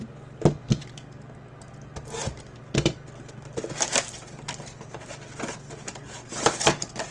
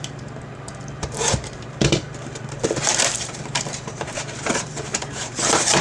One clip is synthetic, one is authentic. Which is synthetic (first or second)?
second